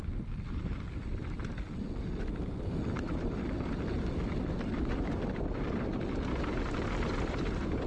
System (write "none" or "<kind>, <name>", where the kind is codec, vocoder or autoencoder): none